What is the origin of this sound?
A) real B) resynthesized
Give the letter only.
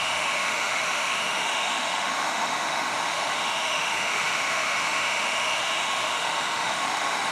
B